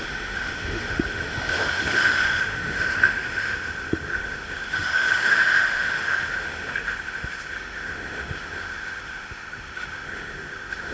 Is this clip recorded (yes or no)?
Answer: no